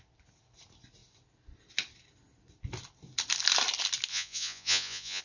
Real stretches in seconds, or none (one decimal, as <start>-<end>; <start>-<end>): 0.0-4.1